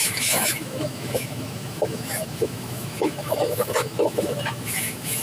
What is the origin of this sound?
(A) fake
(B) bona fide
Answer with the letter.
A